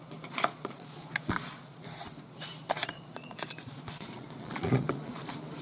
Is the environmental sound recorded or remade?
remade